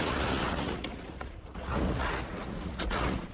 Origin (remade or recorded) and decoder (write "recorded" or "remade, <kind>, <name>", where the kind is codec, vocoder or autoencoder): remade, vocoder, Vocos